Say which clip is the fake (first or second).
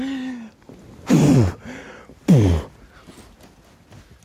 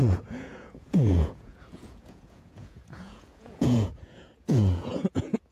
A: second